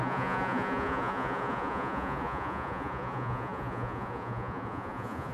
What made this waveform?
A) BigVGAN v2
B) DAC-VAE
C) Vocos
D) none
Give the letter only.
C